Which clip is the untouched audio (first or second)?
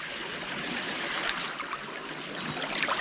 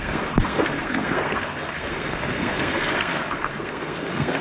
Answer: first